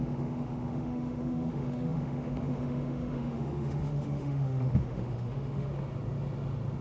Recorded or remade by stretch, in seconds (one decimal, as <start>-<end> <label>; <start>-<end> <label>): 0.0-5.7 remade; 5.7-6.8 recorded